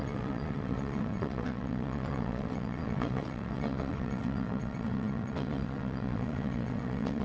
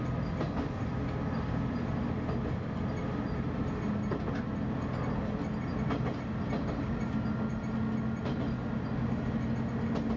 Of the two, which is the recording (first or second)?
second